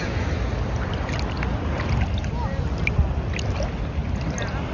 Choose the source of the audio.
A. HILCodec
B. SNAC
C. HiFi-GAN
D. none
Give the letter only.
D